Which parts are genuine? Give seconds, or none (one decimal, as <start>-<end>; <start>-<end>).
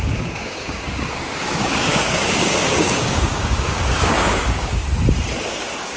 4.8-5.4